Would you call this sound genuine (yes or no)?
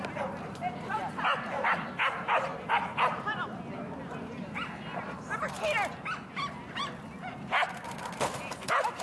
yes